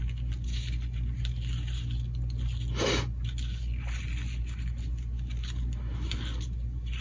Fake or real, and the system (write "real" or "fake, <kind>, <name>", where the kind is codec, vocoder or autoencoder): real